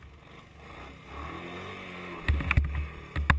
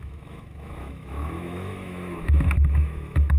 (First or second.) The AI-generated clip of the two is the second